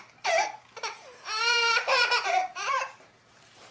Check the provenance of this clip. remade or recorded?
remade